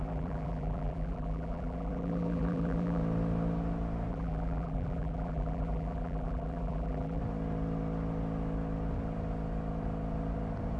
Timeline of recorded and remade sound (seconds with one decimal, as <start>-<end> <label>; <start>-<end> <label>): 0.0-3.0 remade; 3.0-4.1 recorded; 4.1-7.2 remade; 7.2-10.8 recorded